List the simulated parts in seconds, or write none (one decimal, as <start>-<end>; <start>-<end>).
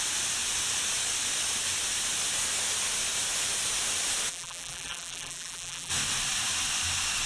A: 4.3-5.9